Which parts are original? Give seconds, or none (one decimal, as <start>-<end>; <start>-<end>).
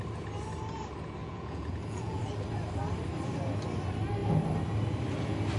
0.0-1.2; 2.2-5.6